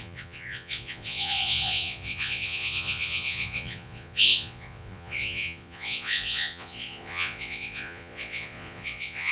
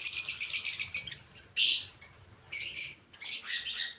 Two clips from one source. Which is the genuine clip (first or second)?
second